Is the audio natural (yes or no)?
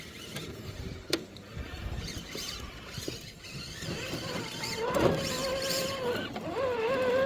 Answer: yes